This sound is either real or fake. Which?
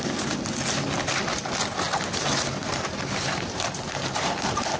real